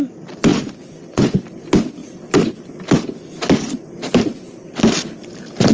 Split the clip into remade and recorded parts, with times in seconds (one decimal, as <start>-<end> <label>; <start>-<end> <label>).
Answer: 0.0-0.5 recorded; 0.5-1.4 remade; 1.4-5.7 recorded

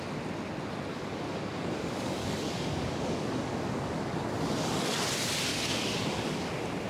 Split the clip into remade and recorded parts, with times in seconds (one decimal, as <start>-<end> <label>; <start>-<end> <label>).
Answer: 0.0-0.9 recorded; 0.9-5.0 remade; 5.0-5.5 recorded; 5.5-6.5 remade; 6.5-6.9 recorded

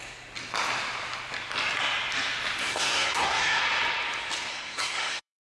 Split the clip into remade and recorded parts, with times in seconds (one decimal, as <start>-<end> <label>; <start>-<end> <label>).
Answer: 0.0-2.6 recorded; 2.6-3.6 remade; 3.6-4.5 recorded; 4.5-5.5 remade

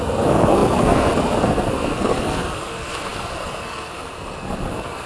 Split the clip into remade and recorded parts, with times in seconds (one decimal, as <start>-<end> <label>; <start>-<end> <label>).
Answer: 0.0-5.1 remade

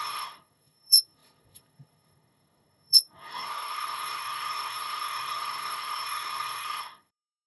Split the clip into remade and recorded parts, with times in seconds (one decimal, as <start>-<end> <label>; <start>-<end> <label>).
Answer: 0.0-7.5 remade

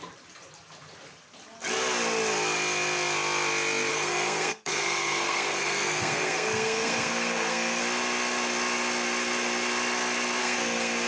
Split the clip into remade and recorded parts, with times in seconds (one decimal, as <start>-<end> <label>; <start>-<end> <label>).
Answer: 0.0-3.9 recorded; 3.9-7.8 remade; 7.8-10.4 recorded; 10.4-11.1 remade

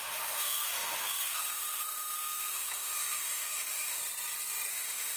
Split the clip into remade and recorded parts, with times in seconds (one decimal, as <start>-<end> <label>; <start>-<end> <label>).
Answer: 0.0-4.0 remade; 4.0-4.7 recorded; 4.7-5.2 remade